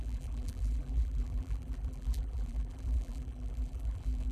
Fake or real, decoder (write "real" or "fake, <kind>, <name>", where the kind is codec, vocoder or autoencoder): fake, vocoder, BigVGAN v2